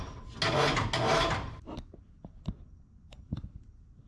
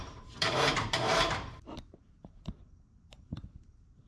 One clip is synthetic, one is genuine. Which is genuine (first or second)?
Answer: first